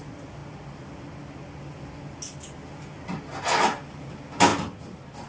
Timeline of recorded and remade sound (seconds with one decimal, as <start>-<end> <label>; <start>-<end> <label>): 0.0-5.3 recorded